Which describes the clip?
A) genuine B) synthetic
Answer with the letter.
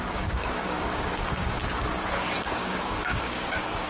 B